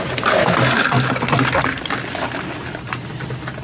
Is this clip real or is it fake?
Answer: real